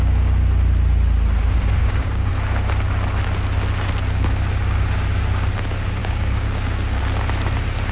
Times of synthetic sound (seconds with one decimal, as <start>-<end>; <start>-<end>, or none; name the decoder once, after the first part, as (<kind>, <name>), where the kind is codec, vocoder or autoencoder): 1.8-2.3 (codec, DAC); 6.0-7.0